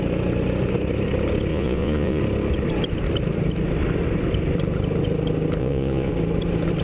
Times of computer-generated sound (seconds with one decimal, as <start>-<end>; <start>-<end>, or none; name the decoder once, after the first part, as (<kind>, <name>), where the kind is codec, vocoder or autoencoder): 1.5-2.2 (vocoder, Vocos); 5.6-6.1